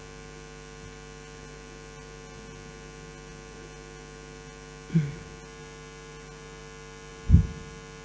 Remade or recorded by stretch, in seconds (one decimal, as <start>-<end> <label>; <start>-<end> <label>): 0.0-8.0 recorded